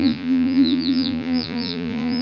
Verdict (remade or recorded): remade